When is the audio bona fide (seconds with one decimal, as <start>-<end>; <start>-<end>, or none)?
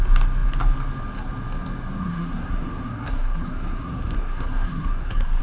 0.0-2.0